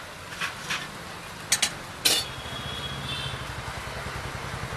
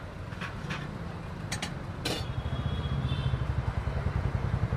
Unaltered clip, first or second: first